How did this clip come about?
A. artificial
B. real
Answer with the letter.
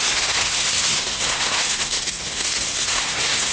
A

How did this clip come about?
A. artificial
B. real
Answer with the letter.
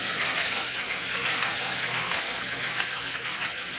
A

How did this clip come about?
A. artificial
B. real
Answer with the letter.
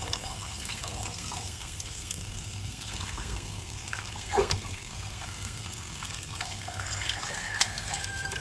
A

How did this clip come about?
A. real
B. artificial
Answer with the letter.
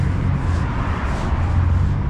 A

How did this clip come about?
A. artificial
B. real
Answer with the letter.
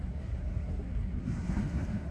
A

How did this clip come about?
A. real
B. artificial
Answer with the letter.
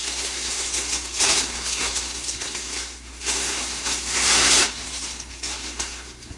B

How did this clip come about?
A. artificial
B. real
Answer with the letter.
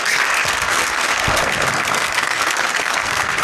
A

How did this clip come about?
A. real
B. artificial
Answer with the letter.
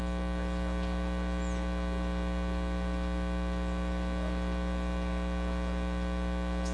A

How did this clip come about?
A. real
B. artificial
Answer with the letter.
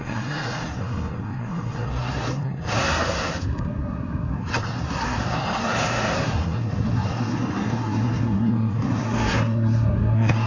B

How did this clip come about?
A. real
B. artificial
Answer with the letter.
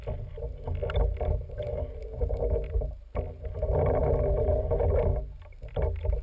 A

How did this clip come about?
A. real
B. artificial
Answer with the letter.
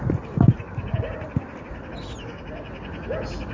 A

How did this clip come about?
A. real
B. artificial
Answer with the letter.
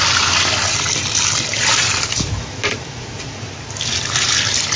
A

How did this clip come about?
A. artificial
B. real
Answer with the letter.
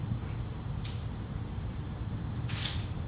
B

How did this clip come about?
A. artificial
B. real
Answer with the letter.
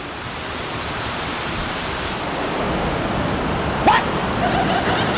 B